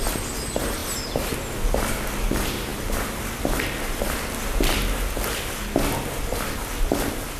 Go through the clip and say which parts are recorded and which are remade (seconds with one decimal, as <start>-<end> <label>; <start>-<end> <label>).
0.0-7.4 recorded